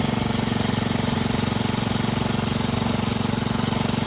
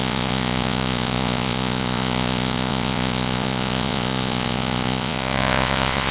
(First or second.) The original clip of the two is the first